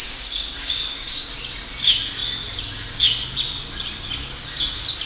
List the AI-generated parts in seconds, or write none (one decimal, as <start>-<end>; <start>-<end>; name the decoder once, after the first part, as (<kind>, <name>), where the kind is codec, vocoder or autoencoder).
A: 0.0-1.3 (codec, DAC)